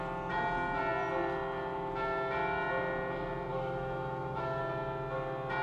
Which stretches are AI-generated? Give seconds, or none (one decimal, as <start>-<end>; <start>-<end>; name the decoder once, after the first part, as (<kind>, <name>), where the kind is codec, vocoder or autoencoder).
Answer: 3.5-4.6 (autoencoder, DAC-VAE)